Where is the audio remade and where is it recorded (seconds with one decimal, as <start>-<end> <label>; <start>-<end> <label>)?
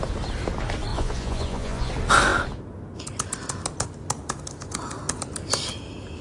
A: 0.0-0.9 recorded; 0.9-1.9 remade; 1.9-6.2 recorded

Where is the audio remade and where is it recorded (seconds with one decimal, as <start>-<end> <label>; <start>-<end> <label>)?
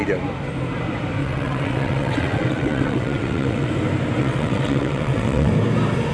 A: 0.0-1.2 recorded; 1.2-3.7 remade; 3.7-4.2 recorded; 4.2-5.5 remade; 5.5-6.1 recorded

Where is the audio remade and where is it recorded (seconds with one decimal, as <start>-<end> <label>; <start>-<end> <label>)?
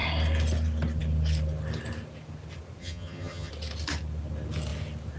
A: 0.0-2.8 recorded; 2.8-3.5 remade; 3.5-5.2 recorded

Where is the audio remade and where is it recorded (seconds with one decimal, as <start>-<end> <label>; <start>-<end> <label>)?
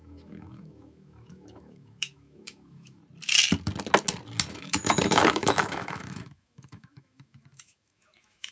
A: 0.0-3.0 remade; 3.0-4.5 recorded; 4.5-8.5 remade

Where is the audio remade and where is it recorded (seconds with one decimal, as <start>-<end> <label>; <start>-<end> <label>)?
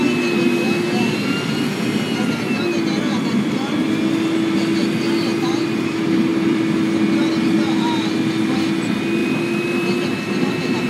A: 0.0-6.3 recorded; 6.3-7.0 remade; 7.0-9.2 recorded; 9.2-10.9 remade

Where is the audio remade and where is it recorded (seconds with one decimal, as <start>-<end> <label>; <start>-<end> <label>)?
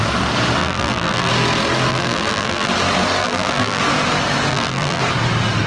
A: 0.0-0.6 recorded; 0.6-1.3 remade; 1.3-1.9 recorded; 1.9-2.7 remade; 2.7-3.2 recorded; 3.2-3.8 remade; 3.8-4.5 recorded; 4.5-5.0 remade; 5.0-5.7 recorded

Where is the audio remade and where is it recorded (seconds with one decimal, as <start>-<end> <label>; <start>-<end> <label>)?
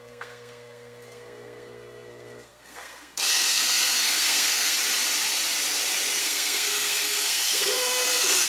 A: 0.0-4.8 remade; 4.8-6.2 recorded; 6.2-8.5 remade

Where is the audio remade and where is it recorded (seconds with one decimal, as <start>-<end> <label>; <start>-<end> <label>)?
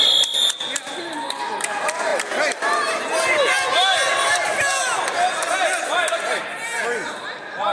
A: 0.0-7.7 recorded